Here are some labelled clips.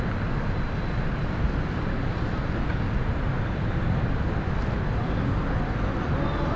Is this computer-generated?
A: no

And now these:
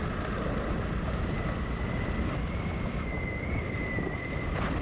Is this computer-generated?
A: no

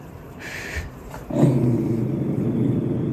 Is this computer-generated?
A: yes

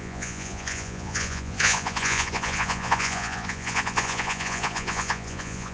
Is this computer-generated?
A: yes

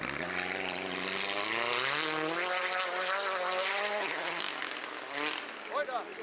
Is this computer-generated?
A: no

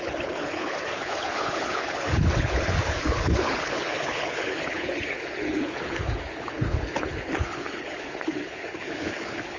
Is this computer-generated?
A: yes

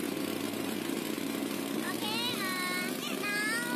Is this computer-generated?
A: no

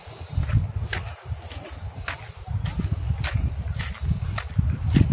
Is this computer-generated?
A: no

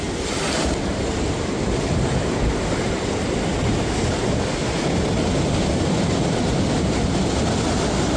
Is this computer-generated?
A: no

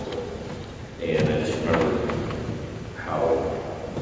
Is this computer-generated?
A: no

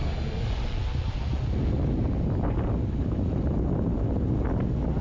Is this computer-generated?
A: no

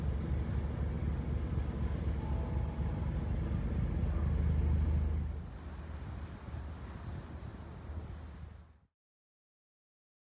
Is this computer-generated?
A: no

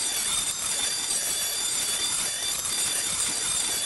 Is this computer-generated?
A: yes